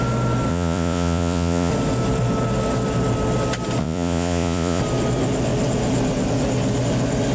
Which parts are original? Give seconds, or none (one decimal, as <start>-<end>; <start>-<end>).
0.0-0.5; 1.7-3.8; 4.8-7.3